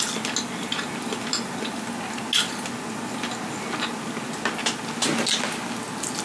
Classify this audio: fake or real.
real